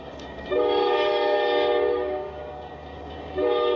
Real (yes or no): no